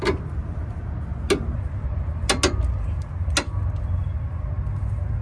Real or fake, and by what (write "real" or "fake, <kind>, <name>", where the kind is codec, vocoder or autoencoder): real